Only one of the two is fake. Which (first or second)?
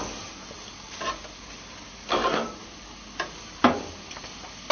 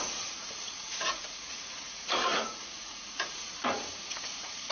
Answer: second